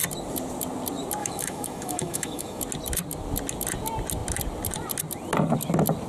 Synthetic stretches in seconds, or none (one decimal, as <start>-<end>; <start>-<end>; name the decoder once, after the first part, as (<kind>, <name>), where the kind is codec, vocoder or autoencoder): 1.2-2.6 (autoencoder, DAC-VAE)